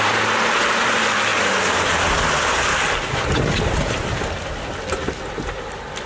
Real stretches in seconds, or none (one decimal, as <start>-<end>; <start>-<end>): 0.0-6.1